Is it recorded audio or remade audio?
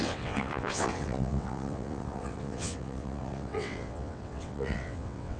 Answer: remade